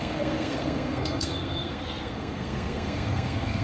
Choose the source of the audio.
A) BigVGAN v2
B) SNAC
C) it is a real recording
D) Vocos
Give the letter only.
B